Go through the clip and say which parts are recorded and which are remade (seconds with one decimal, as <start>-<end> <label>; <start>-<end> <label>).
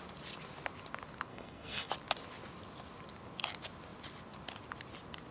0.0-1.3 recorded; 1.3-1.9 remade; 1.9-5.3 recorded